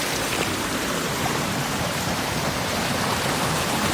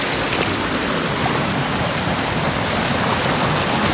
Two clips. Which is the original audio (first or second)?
second